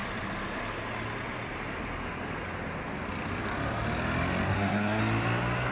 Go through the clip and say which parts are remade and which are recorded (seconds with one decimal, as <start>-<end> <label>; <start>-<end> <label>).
0.0-4.5 recorded; 4.5-5.0 remade; 5.0-5.7 recorded